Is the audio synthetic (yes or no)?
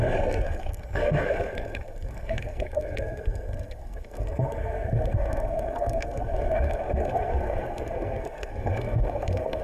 yes